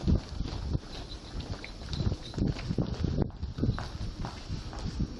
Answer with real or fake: real